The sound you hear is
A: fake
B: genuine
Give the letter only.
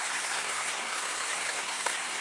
A